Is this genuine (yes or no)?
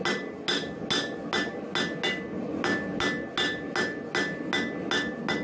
yes